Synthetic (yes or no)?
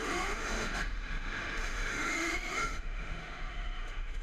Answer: yes